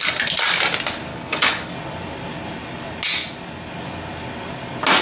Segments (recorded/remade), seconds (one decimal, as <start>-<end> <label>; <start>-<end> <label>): 0.0-1.1 recorded; 1.1-1.7 remade; 1.7-5.0 recorded